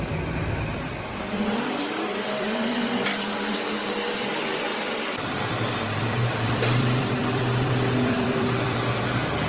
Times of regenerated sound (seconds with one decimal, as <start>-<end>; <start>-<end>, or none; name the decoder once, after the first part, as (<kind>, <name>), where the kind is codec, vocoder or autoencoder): 1.3-3.7 (vocoder, BigVGAN v2); 4.7-8.8

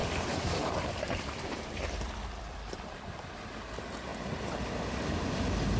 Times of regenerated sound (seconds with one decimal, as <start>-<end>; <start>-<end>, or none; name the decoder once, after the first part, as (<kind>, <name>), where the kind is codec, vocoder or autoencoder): 0.0-3.5 (vocoder, BigVGAN v2); 4.1-4.7